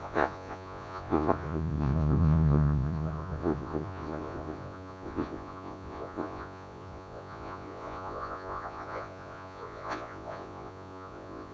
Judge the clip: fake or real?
fake